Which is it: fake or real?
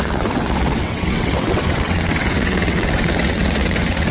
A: fake